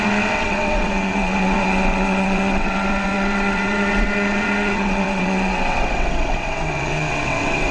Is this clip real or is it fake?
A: fake